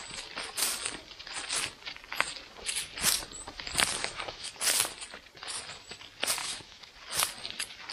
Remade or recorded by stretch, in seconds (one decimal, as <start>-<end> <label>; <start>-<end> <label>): 0.0-4.0 recorded; 4.0-4.5 remade; 4.5-6.4 recorded; 6.4-6.9 remade; 6.9-7.9 recorded